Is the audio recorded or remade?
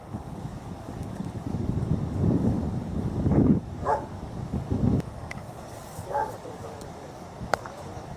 remade